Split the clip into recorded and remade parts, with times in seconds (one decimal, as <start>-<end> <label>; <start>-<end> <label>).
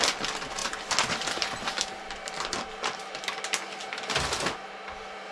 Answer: 0.0-5.3 recorded